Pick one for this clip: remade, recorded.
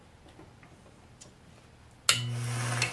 recorded